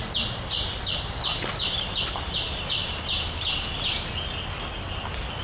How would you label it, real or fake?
real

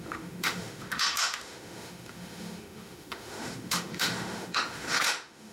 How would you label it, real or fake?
fake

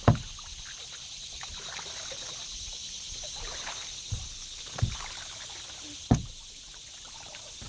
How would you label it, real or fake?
real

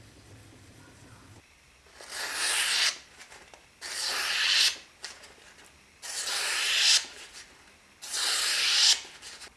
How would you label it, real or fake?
real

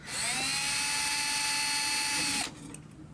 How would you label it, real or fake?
real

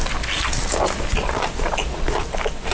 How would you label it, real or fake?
real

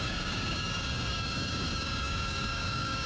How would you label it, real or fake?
fake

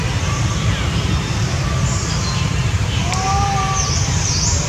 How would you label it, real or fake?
fake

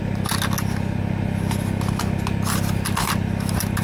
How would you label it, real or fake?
real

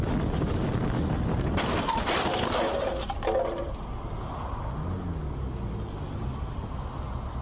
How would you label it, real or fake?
real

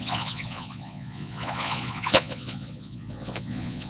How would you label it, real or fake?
fake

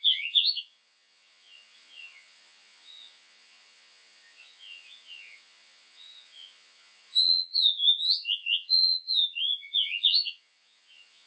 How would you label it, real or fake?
fake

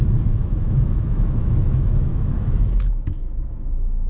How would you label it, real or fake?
fake